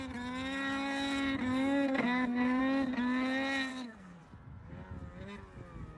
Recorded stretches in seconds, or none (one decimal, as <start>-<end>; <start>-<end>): 0.0-1.4; 2.6-3.7; 4.2-6.0